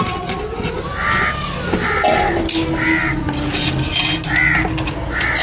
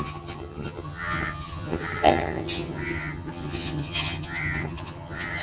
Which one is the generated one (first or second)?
second